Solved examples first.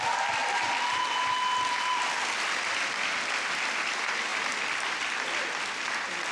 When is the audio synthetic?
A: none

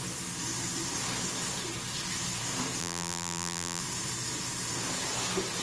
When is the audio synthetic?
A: 2.8-3.8 (vocoder, BigVGAN v2)

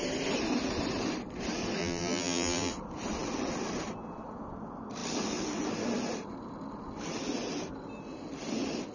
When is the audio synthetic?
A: 1.8-2.7 (vocoder, BigVGAN v2)